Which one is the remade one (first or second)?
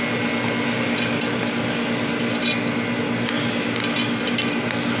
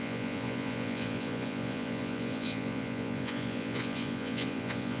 second